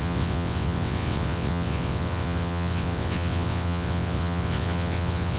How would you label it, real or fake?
fake